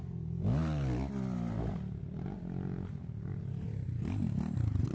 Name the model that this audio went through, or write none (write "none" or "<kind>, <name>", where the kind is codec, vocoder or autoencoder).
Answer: none